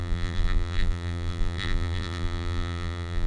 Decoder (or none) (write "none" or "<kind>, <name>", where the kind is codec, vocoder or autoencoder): vocoder, BigVGAN v2